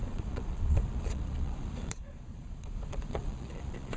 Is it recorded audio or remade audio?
remade